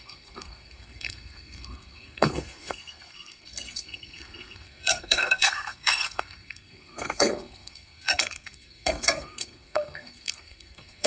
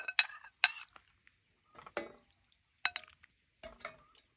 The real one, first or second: second